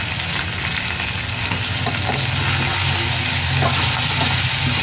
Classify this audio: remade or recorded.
recorded